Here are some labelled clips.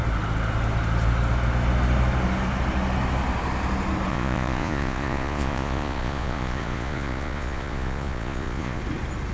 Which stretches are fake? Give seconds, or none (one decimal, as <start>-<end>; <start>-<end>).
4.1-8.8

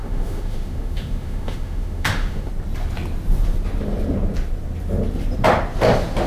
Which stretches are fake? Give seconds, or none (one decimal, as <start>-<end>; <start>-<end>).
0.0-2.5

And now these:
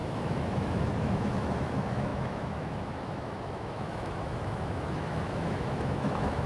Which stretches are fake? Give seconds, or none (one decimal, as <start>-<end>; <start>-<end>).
0.0-6.5

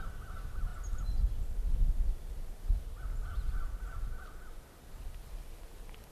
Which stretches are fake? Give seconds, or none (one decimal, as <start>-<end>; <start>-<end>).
none

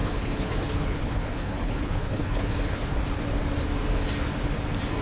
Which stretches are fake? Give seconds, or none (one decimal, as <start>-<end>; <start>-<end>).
0.0-3.0